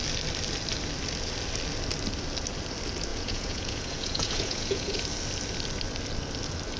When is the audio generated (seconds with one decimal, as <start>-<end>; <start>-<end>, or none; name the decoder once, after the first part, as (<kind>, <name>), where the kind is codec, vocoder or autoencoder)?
3.1-5.0 (vocoder, Vocos)